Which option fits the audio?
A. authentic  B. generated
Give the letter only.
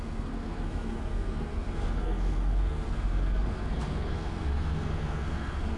B